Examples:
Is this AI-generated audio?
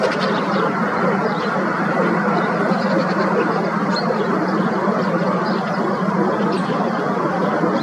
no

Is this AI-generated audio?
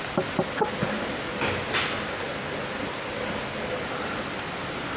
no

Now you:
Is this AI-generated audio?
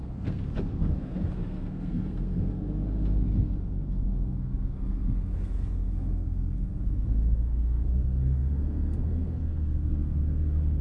yes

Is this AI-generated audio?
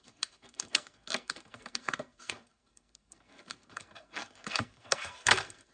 yes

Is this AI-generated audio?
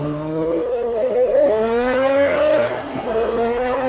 yes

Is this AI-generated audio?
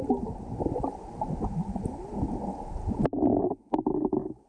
no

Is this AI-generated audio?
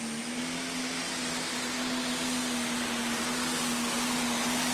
no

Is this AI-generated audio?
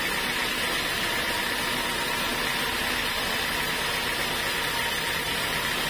no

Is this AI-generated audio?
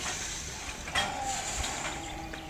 no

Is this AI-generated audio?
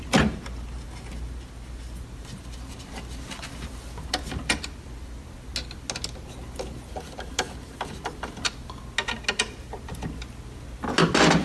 no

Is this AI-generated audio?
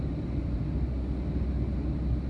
no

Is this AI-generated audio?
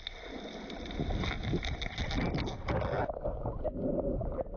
no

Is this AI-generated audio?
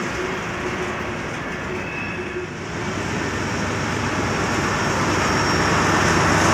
no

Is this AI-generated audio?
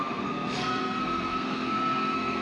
yes